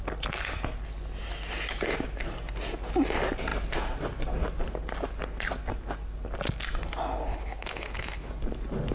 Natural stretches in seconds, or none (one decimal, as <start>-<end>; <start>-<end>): 0.0-7.3; 8.3-8.9